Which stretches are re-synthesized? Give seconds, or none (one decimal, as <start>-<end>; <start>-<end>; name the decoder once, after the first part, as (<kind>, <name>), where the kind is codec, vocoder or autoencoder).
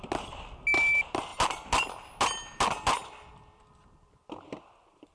3.0-3.6 (vocoder, BigVGAN v2)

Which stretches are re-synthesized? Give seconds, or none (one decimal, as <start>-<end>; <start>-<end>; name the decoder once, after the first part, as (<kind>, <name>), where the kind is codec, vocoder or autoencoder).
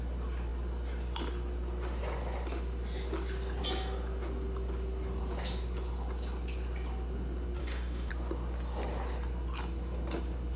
7.6-8.1 (autoencoder, DAC-VAE)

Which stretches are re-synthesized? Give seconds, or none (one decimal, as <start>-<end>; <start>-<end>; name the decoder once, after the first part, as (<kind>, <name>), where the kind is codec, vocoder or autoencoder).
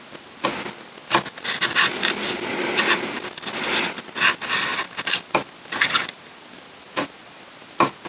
none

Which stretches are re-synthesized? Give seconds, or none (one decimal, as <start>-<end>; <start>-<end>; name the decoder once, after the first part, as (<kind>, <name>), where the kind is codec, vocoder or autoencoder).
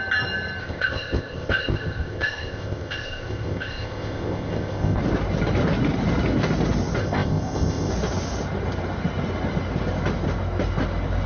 0.6-5.0 (codec, ZipCodec); 7.0-7.9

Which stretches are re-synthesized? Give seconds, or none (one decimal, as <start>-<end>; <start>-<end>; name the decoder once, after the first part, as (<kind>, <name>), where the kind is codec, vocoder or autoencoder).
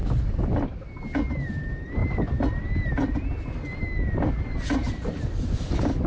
none